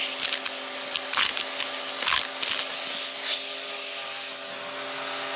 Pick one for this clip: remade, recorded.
recorded